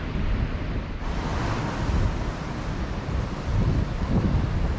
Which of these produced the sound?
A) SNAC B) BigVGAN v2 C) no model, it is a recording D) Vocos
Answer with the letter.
C